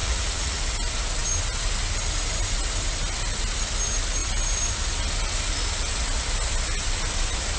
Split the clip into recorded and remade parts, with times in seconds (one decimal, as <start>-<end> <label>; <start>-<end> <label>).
0.0-0.6 remade; 0.6-7.6 recorded